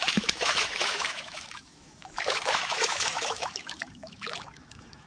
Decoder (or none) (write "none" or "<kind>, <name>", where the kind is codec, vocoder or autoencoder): autoencoder, DAC-VAE